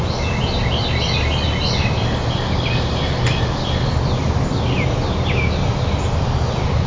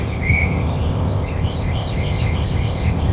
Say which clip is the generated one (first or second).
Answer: second